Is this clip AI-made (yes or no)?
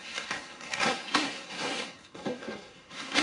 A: yes